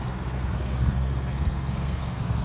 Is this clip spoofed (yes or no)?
yes